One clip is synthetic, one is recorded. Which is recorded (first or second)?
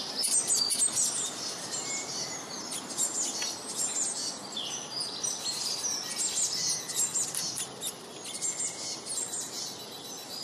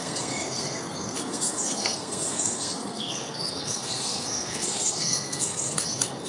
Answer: first